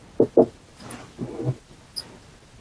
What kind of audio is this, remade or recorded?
recorded